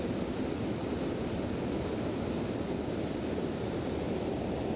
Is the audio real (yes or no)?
yes